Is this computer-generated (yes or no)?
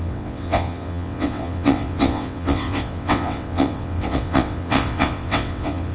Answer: yes